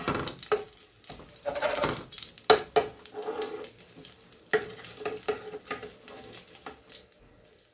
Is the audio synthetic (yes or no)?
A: no